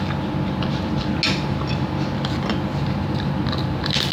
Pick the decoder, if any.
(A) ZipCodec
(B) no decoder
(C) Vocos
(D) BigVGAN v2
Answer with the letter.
B